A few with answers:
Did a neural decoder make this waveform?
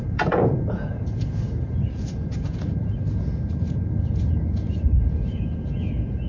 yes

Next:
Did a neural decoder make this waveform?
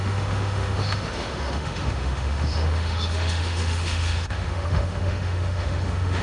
yes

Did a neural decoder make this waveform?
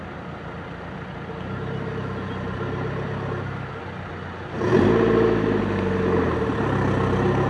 no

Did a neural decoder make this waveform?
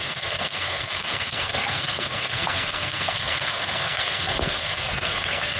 yes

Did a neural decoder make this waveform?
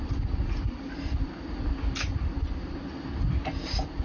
no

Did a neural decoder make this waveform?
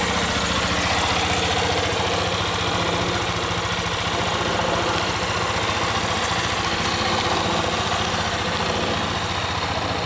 no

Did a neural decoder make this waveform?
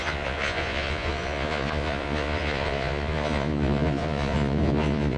yes